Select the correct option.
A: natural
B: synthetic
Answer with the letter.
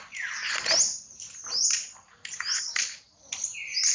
A